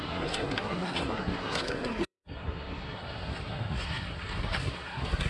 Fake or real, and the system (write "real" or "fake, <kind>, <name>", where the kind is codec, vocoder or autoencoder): fake, codec, SNAC